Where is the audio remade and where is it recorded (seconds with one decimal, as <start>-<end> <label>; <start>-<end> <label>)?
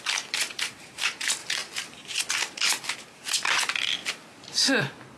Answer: 0.0-1.4 recorded; 1.4-2.2 remade; 2.2-5.2 recorded